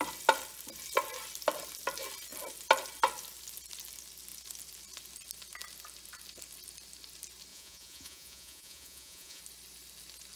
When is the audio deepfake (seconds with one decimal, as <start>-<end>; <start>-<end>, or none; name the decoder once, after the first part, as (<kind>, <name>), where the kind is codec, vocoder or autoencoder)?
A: 7.5-9.4 (vocoder, Vocos)